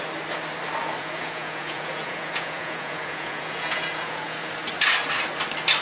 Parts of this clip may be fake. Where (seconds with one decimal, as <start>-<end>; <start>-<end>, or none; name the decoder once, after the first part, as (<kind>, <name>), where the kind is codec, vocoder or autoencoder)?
1.0-4.5 (vocoder, Vocos)